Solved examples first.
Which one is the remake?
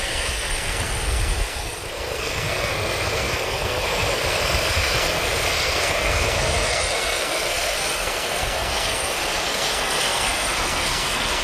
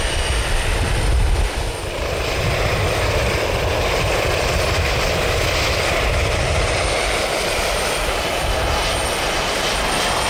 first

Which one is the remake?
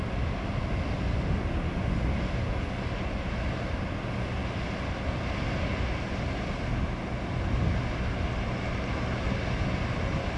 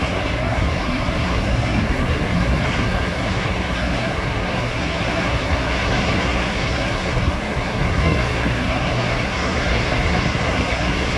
second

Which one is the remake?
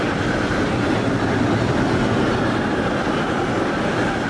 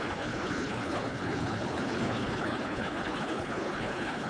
second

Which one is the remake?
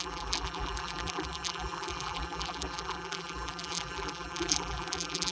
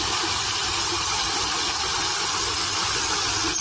first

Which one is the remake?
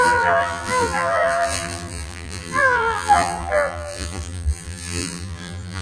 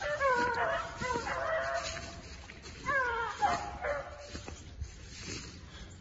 first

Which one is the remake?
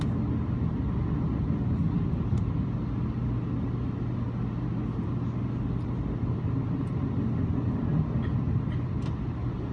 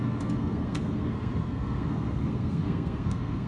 second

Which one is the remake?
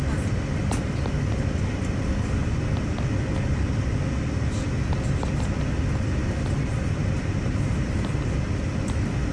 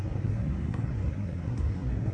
second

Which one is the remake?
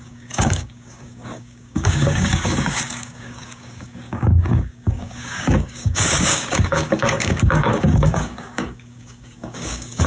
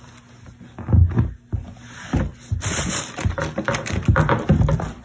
first